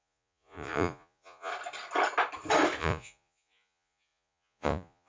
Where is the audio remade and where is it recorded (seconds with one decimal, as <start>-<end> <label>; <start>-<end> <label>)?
0.0-1.5 remade; 1.5-2.8 recorded; 2.8-5.1 remade